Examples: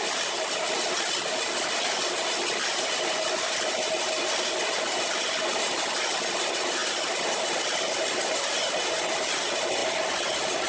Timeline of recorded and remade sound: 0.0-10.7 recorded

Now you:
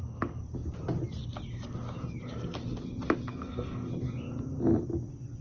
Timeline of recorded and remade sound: 0.0-3.3 recorded; 3.3-3.9 remade; 3.9-5.4 recorded